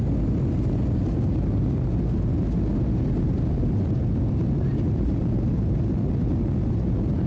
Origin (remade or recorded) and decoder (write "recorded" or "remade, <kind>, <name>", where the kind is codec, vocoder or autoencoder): recorded